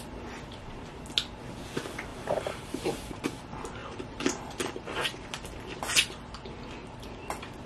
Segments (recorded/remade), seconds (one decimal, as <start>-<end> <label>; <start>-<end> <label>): 0.0-2.1 recorded; 2.1-3.2 remade; 3.2-3.8 recorded; 3.8-5.2 remade; 5.2-7.7 recorded